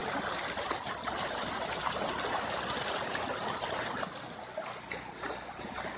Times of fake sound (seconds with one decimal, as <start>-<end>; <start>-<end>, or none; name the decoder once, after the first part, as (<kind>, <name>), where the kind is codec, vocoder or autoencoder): none